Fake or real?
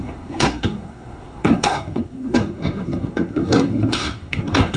fake